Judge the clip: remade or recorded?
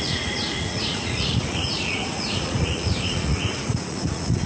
remade